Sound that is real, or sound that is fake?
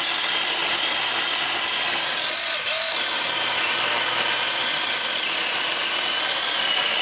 real